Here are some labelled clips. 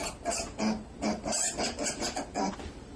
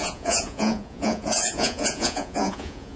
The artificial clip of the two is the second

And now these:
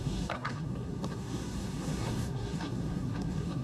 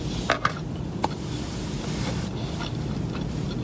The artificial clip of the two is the first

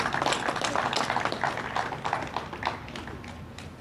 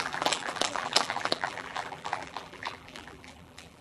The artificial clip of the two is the second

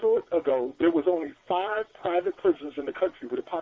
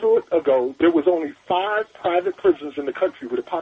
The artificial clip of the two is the first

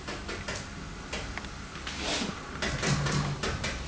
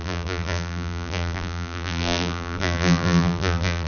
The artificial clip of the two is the second